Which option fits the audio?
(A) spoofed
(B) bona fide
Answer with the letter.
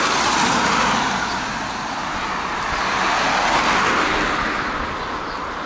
B